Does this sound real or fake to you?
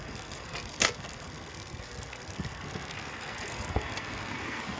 fake